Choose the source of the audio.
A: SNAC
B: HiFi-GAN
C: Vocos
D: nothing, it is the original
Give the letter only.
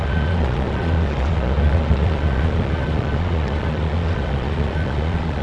C